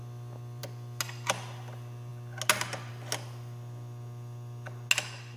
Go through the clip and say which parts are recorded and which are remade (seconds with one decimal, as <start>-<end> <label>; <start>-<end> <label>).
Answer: 0.0-5.4 recorded